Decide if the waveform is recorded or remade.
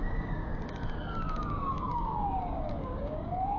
remade